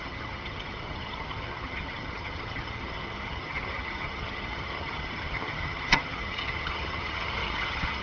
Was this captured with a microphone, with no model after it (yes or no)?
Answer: no